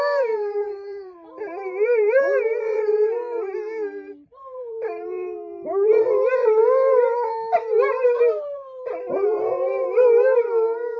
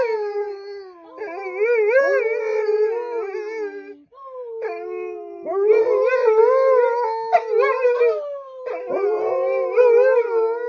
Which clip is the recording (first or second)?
second